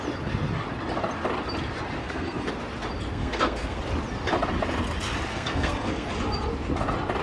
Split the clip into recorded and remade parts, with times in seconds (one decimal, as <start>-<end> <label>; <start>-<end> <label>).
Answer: 0.0-2.0 recorded; 2.0-2.5 remade; 2.5-3.1 recorded; 3.1-3.8 remade; 3.8-5.3 recorded; 5.3-6.1 remade; 6.1-7.2 recorded